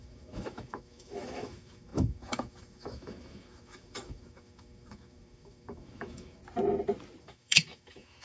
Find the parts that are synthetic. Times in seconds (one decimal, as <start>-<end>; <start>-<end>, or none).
0.0-6.4; 7.2-8.2

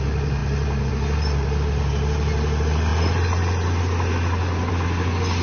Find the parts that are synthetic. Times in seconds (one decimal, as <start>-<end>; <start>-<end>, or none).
none

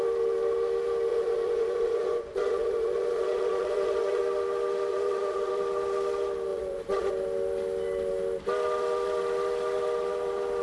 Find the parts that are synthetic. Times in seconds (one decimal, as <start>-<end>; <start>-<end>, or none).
1.1-4.2; 4.9-5.5; 6.5-7.1

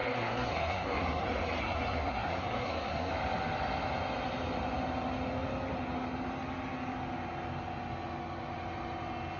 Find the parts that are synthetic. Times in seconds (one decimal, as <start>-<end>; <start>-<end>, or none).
0.0-3.1

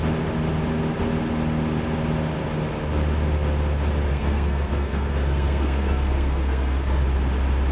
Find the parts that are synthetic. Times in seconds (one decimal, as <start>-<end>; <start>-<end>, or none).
4.1-7.0

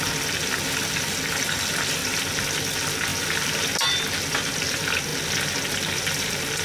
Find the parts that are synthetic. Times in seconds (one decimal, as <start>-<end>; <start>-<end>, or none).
3.1-4.1